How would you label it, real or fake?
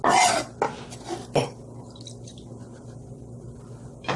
real